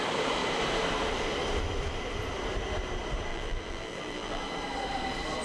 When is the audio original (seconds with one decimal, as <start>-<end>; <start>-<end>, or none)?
0.0-3.3; 4.4-5.4